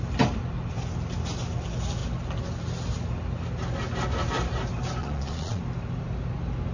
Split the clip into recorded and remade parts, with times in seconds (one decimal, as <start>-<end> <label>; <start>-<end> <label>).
0.0-5.0 recorded; 5.0-5.6 remade; 5.6-6.7 recorded